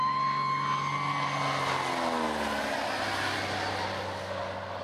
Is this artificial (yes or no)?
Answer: no